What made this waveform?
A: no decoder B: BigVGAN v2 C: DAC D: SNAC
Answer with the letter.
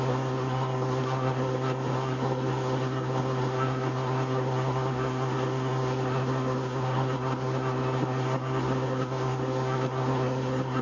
D